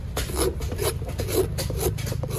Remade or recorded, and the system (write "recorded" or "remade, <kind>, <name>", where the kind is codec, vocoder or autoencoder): recorded